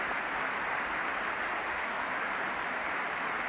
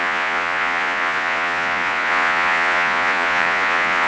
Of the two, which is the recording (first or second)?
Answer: first